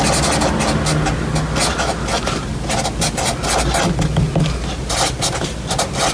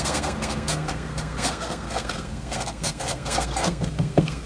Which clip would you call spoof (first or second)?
second